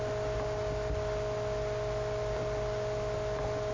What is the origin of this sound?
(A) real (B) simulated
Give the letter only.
A